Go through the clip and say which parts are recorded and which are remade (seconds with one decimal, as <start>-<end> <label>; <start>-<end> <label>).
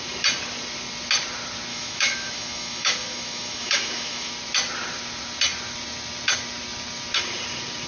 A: 0.0-1.7 recorded; 1.7-4.3 remade; 4.3-7.9 recorded